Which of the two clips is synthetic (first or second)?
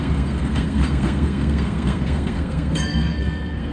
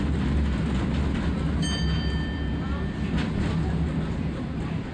first